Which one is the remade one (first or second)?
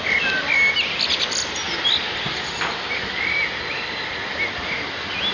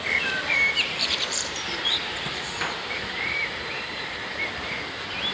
second